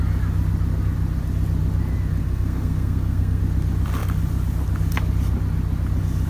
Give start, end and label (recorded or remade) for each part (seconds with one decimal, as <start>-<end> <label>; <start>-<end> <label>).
0.0-2.2 recorded; 2.2-3.4 remade; 3.4-6.3 recorded